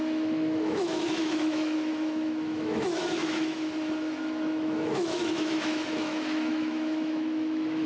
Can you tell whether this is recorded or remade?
remade